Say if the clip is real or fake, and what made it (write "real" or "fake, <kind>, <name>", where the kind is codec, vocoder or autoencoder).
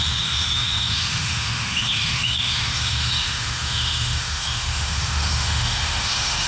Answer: fake, autoencoder, DAC-VAE